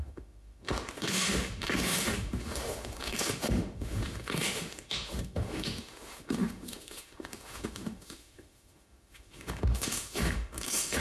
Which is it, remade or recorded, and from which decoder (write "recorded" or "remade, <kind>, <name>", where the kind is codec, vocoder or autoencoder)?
remade, autoencoder, DAC-VAE